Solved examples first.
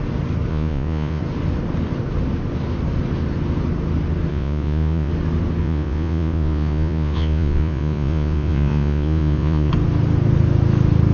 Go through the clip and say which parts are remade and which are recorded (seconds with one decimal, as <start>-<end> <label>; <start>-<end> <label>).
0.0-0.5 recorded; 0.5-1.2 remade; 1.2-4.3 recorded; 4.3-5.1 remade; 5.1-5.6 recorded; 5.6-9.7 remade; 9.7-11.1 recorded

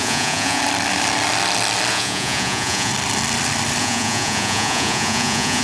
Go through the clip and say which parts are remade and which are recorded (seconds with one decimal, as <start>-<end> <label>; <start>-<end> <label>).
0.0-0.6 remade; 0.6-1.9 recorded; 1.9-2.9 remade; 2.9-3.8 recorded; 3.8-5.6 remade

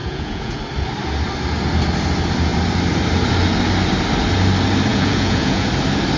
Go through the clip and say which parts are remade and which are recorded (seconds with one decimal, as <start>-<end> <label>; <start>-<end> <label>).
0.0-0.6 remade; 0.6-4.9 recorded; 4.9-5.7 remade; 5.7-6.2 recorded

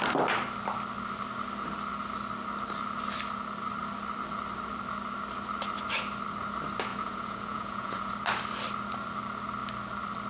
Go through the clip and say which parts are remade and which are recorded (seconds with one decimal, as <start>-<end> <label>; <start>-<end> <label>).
0.0-6.9 recorded; 6.9-8.1 remade; 8.1-10.3 recorded

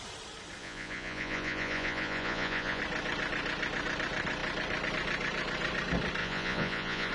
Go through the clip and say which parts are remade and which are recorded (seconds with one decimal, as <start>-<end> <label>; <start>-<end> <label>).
0.0-0.6 recorded; 0.6-2.8 remade; 2.8-6.2 recorded; 6.2-7.1 remade